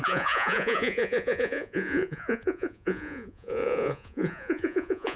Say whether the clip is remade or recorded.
remade